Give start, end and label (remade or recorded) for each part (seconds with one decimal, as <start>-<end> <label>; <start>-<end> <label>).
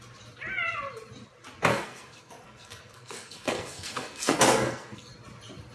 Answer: 0.0-1.7 recorded; 1.7-5.1 remade; 5.1-5.7 recorded